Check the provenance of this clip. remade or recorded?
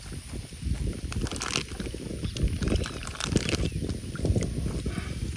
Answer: recorded